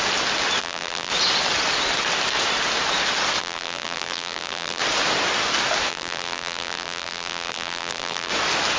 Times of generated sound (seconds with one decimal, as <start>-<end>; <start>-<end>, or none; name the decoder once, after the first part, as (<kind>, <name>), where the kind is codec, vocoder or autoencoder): 0.6-1.1 (vocoder, BigVGAN v2); 3.4-4.8; 5.9-8.3